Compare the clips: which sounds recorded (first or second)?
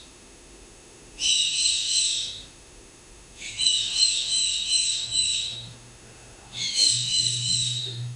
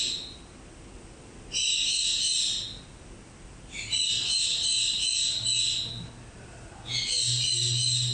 second